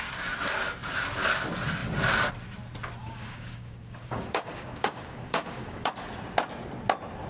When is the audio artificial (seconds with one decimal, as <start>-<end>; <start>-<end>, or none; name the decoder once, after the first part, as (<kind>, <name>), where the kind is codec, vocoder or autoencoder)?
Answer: 3.0-5.9 (codec, DAC)